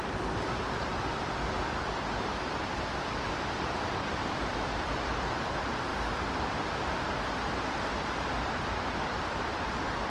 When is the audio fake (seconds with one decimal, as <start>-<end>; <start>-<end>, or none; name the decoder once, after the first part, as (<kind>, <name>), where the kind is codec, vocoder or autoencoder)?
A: 0.0-5.9 (vocoder, BigVGAN v2); 7.0-10.1